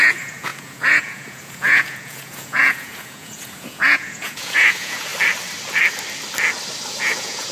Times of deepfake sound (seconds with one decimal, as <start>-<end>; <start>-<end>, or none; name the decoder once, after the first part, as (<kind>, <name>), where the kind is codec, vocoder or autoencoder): 0.0-5.1 (vocoder, Vocos); 6.9-7.5